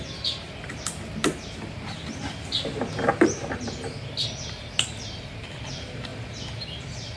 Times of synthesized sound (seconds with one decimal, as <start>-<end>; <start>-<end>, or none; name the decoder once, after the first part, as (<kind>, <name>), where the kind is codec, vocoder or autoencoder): none